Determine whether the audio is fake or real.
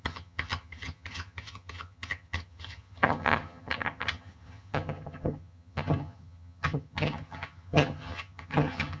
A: fake